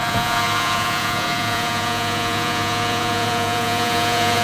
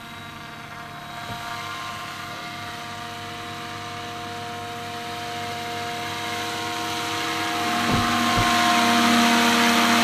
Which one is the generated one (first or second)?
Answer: first